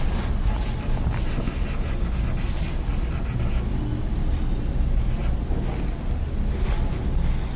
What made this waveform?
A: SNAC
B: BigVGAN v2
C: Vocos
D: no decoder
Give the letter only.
D